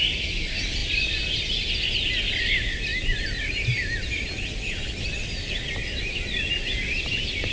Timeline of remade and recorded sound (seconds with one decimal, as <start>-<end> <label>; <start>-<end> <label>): 0.0-7.5 recorded